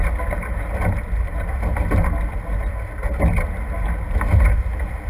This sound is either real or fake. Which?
real